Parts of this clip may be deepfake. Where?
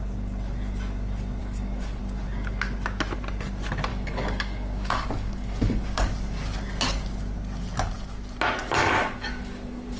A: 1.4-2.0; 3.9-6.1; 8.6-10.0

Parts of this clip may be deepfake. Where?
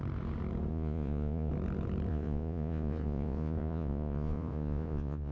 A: 0.7-1.5; 2.1-5.3